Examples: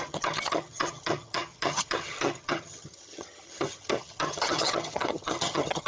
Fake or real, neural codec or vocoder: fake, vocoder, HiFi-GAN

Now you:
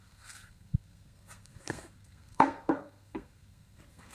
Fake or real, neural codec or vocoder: fake, codec, SNAC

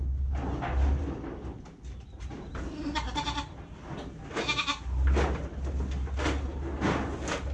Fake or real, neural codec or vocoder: real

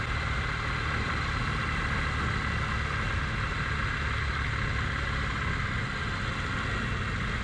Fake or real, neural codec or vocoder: real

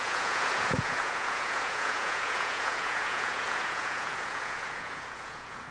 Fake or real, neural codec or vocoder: fake, vocoder, Vocos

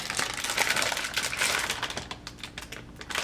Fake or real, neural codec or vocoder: real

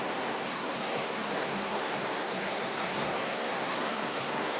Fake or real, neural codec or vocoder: fake, codec, SNAC